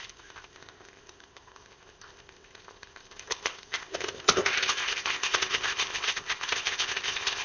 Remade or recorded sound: remade